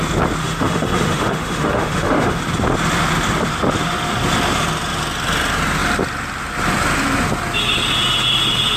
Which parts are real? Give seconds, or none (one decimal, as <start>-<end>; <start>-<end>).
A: 0.0-0.4; 2.4-8.8